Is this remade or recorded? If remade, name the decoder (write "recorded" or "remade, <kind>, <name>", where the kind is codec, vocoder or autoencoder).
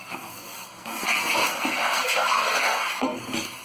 remade, codec, SNAC